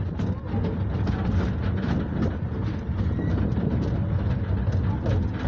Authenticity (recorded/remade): recorded